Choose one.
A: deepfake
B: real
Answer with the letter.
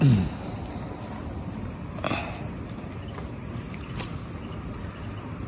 B